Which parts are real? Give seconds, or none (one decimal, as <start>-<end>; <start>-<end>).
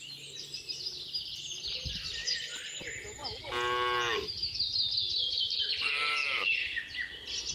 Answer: 0.0-5.2; 6.8-7.5